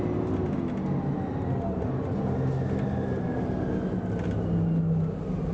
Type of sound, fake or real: real